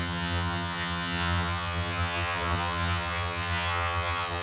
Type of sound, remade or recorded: remade